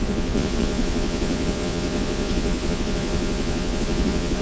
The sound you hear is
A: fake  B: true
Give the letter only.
A